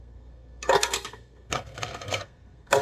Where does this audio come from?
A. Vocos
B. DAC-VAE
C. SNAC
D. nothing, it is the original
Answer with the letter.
C